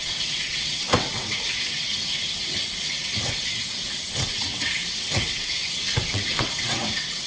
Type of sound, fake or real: fake